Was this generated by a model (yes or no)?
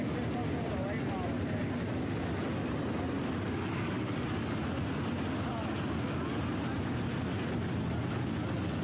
no